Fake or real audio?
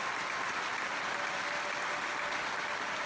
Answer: real